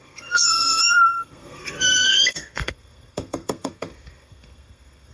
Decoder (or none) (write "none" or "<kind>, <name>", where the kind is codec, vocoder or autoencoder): codec, SNAC